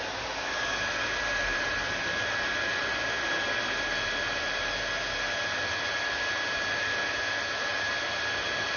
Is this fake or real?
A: real